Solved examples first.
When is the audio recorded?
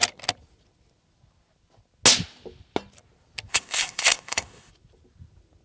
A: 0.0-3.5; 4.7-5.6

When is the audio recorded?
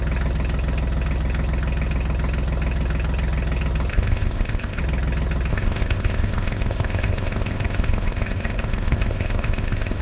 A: 0.0-3.9; 4.8-5.5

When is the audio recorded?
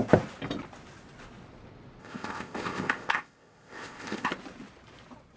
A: 0.0-2.0; 4.3-5.4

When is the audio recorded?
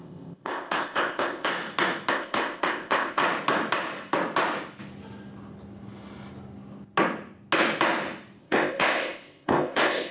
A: 1.5-2.1; 3.2-8.4